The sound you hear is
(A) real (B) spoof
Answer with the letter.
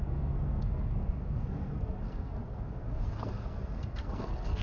B